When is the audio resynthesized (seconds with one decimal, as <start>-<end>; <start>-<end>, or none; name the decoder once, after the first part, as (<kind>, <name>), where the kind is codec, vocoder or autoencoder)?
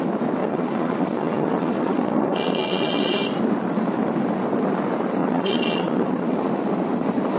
0.4-3.2 (vocoder, Vocos); 5.2-6.5